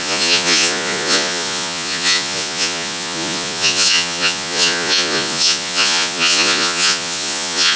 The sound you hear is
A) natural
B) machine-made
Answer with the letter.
B